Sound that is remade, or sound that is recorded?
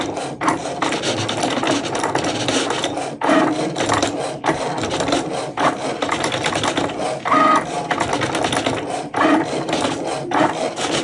recorded